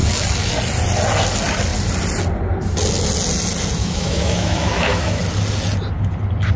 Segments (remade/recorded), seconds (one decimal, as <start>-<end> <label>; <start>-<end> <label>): 0.0-3.8 recorded; 3.8-5.2 remade; 5.2-6.6 recorded